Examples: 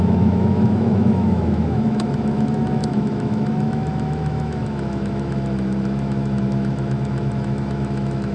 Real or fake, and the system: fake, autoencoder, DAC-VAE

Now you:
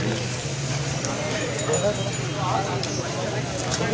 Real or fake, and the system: real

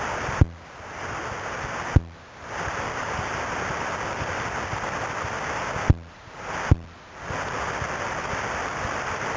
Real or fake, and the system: real